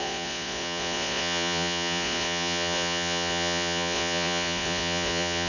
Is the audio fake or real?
fake